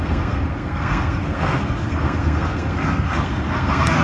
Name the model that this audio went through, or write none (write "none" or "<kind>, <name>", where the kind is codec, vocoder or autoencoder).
codec, SNAC